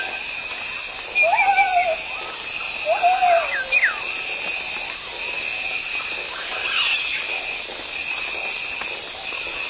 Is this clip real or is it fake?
real